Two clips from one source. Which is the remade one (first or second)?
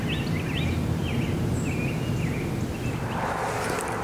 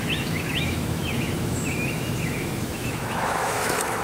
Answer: second